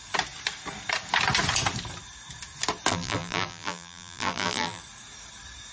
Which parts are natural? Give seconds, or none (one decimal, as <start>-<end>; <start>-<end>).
0.0-2.9; 4.8-5.7